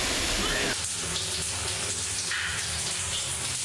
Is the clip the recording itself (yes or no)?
yes